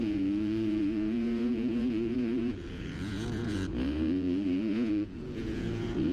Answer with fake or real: fake